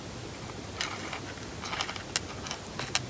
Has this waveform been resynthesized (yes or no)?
no